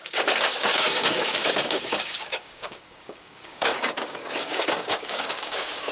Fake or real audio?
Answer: fake